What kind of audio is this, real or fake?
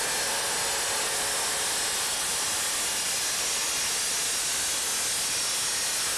real